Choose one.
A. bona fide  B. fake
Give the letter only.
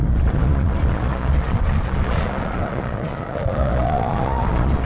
B